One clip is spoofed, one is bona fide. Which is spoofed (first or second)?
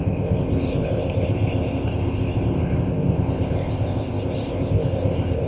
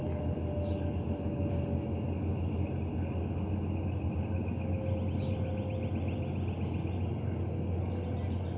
first